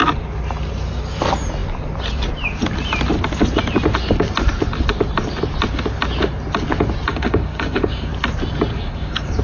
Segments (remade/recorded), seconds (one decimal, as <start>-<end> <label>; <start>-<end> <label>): 0.0-7.1 recorded; 7.1-8.1 remade; 8.1-8.7 recorded; 8.7-9.4 remade